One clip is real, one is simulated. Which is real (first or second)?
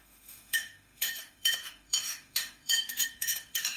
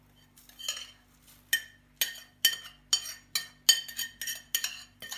second